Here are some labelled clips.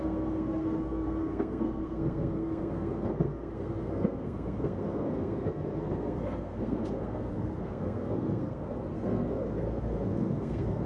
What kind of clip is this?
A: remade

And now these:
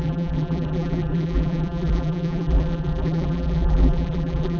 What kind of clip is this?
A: remade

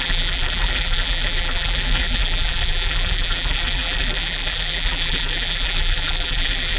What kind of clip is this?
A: remade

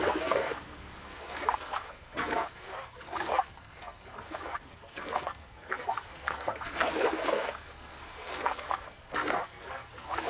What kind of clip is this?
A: remade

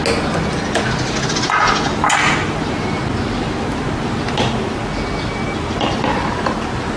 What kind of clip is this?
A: recorded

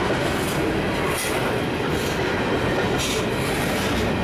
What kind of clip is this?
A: recorded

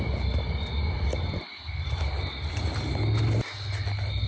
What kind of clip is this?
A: recorded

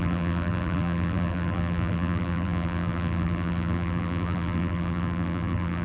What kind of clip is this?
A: remade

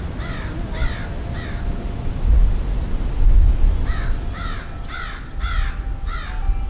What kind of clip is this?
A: recorded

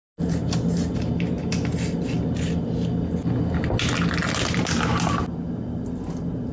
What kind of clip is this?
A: recorded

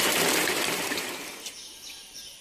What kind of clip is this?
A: recorded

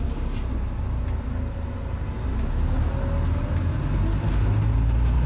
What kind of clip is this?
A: recorded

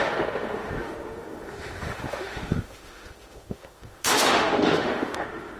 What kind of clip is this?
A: remade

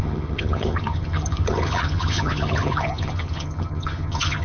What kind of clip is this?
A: remade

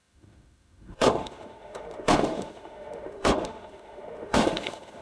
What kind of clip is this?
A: remade